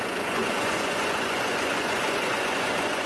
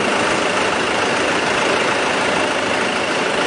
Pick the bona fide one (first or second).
second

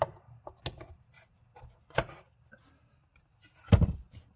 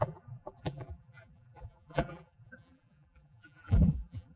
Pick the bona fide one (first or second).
first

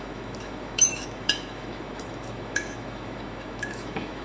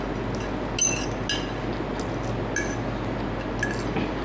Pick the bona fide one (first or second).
second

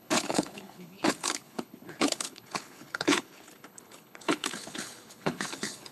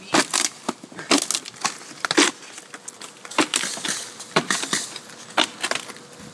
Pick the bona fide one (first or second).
second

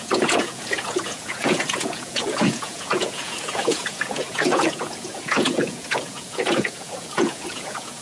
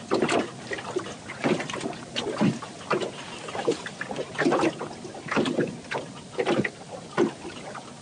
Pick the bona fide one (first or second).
second